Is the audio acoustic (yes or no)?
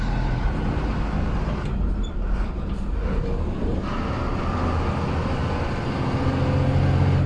yes